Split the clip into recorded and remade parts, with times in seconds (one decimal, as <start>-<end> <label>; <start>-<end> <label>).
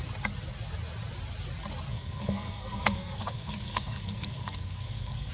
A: 0.0-1.9 recorded; 1.9-5.3 remade